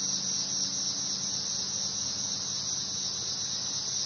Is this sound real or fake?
real